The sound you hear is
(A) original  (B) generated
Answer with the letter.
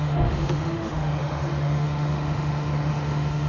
B